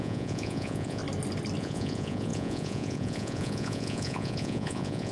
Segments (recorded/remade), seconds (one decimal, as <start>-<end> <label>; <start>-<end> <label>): 0.0-1.0 remade; 1.0-1.6 recorded; 1.6-5.1 remade